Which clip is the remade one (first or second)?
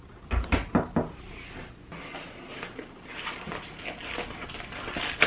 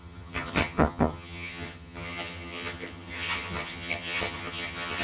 second